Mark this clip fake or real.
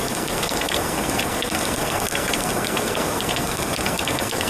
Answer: fake